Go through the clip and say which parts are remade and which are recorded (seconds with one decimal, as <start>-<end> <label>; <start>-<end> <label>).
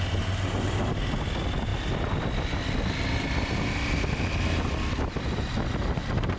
0.0-6.4 recorded